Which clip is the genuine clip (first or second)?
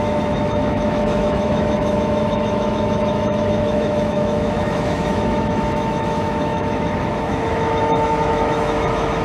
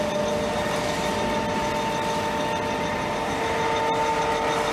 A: second